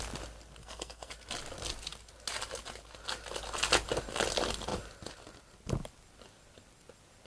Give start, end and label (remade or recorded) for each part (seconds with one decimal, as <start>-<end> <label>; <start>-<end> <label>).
0.0-0.6 recorded; 0.6-1.1 remade; 1.1-7.3 recorded